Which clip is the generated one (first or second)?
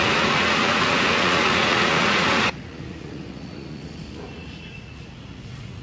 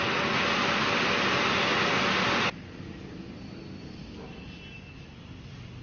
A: first